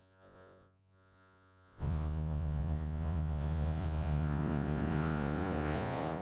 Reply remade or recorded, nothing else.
remade